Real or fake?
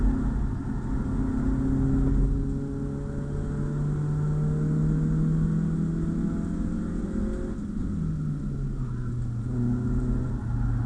real